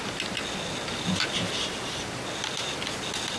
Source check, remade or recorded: recorded